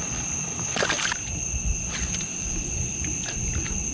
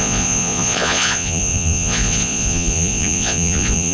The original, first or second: first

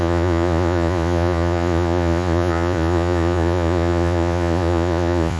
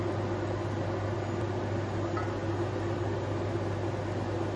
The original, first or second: second